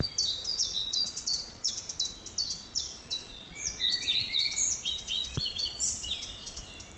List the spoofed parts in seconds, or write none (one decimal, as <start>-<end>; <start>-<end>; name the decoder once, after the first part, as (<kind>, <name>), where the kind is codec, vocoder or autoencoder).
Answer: 0.5-1.7 (vocoder, Vocos); 2.4-6.6